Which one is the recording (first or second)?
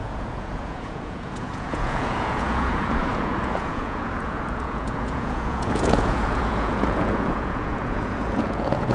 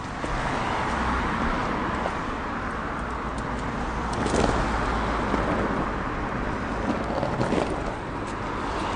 second